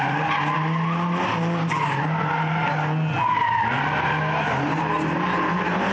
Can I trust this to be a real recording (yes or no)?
yes